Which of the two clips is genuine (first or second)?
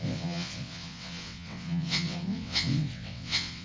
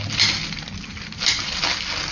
second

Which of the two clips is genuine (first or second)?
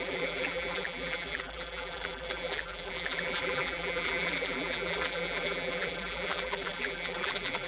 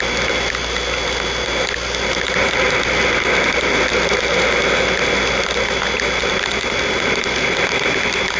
second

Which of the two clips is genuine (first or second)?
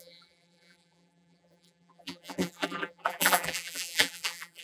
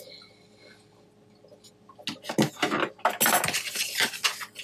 second